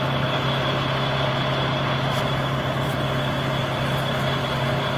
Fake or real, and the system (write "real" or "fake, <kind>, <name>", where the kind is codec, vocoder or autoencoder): real